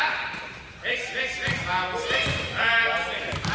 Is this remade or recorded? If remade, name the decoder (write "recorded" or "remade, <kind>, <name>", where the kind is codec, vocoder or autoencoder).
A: recorded